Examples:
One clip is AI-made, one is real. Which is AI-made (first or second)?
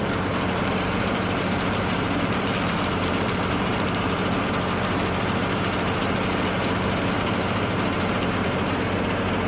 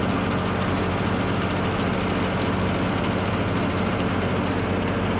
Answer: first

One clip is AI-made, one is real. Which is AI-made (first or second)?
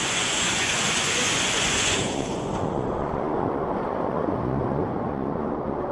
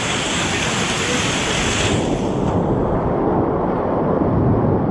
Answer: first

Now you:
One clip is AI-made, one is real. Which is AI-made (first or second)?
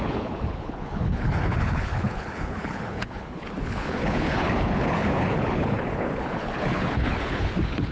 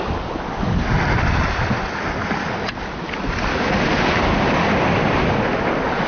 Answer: first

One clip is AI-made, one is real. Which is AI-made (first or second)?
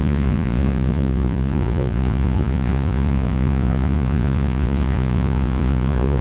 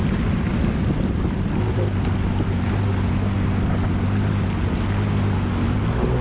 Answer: first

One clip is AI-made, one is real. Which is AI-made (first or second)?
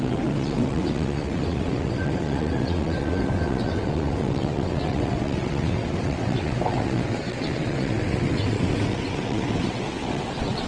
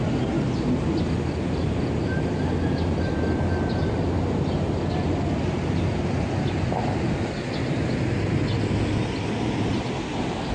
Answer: first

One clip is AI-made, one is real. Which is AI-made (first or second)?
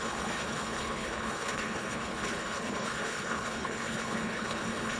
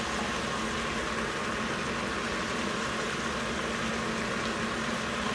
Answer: first